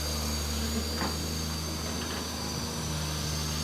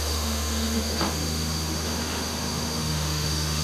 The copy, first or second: second